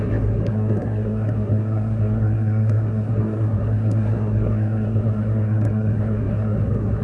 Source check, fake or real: fake